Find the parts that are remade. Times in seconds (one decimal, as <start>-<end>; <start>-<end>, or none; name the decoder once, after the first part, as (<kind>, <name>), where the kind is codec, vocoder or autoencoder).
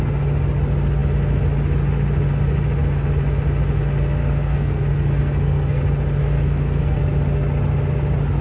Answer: 4.2-5.8 (codec, SNAC); 6.2-7.0